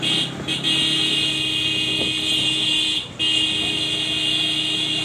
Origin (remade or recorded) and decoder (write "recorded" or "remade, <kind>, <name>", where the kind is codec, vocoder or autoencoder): recorded